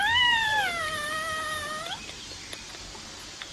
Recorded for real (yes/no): no